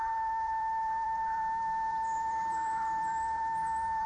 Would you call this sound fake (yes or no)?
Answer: yes